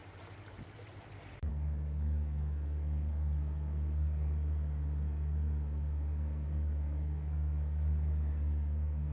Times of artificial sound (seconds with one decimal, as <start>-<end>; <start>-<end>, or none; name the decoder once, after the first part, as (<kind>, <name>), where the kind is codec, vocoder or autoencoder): 1.5-9.1 (codec, SNAC)